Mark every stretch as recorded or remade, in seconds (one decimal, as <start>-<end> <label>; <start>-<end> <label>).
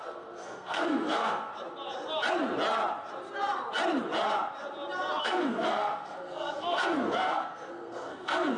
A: 0.0-1.5 remade; 1.5-5.2 recorded; 5.2-8.6 remade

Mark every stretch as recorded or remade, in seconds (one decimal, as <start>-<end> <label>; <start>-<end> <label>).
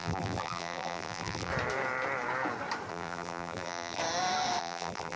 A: 0.0-1.5 remade; 1.5-2.9 recorded; 2.9-4.0 remade; 4.0-4.6 recorded; 4.6-5.2 remade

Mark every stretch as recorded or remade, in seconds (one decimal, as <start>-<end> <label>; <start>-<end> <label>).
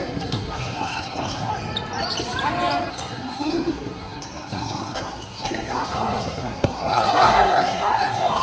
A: 0.0-1.5 remade; 1.5-2.9 recorded; 2.9-8.4 remade